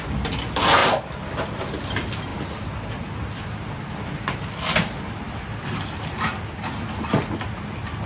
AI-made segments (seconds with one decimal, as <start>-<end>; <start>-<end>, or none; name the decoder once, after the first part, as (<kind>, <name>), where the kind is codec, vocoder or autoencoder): none